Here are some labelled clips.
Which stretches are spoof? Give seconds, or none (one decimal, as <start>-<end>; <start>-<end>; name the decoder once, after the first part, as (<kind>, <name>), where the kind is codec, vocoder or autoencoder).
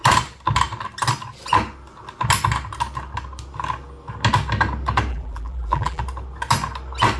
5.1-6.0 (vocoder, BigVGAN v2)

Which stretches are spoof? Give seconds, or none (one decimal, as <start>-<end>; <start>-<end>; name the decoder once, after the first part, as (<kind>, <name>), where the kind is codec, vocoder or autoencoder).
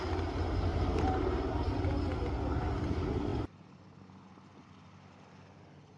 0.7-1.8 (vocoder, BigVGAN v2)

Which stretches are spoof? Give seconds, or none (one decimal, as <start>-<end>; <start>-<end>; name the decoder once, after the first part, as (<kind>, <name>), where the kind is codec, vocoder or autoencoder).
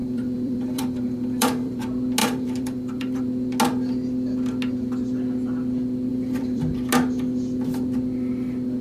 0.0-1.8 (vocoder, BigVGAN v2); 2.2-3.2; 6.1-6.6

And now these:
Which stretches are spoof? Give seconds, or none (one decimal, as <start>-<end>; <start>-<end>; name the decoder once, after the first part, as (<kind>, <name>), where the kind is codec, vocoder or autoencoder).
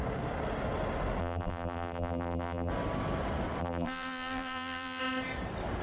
1.2-2.7 (vocoder, BigVGAN v2); 3.6-5.0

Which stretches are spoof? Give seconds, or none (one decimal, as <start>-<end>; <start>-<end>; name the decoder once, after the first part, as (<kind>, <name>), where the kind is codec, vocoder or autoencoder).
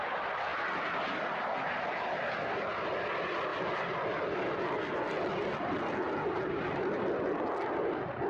none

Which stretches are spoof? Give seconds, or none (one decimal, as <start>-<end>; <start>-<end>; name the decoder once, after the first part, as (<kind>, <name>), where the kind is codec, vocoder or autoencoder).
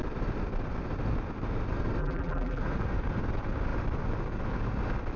2.0-2.6 (vocoder, BigVGAN v2)